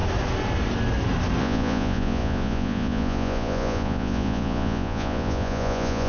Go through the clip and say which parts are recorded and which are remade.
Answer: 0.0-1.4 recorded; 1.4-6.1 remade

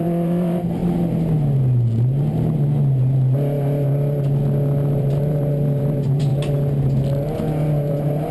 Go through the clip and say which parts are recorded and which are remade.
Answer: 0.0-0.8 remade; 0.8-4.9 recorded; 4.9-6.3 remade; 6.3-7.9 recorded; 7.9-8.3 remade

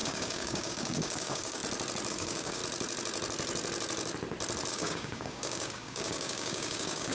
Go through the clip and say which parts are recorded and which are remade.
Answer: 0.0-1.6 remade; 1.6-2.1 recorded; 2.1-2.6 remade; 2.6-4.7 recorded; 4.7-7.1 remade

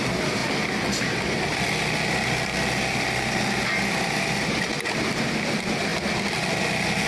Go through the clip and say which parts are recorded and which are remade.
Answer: 0.0-7.1 recorded

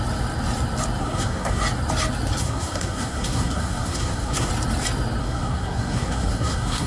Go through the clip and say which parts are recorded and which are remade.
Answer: 0.0-1.0 recorded; 1.0-1.6 remade; 1.6-2.4 recorded; 2.4-4.5 remade; 4.5-5.2 recorded; 5.2-6.9 remade